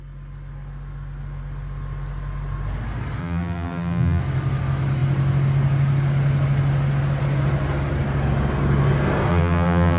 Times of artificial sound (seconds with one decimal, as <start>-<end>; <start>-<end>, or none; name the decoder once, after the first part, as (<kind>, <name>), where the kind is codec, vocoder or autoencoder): 3.2-4.2 (vocoder, BigVGAN v2); 9.3-10.0